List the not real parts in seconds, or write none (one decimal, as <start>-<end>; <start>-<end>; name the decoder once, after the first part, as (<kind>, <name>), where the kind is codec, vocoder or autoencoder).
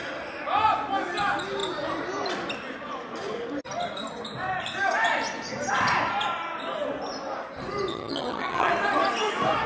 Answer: 7.9-8.7 (vocoder, HiFi-GAN)